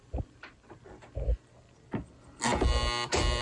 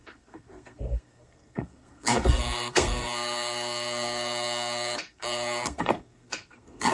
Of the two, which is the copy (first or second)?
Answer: second